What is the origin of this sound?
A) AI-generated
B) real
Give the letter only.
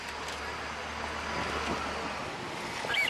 B